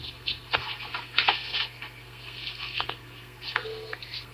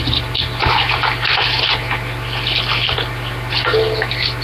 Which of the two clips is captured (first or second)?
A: second